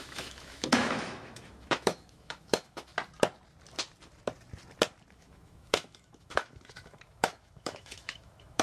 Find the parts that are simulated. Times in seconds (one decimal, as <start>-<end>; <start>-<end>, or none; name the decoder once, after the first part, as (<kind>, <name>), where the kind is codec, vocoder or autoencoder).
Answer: 0.0-2.9 (autoencoder, DAC-VAE); 5.1-8.6